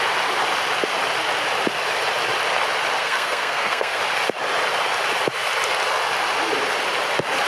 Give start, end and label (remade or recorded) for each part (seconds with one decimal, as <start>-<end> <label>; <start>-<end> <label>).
0.0-3.0 recorded; 3.0-4.0 remade; 4.0-7.5 recorded